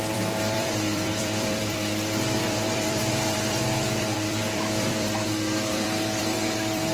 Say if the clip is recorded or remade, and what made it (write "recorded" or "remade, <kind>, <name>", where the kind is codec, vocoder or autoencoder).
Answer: remade, vocoder, BigVGAN v2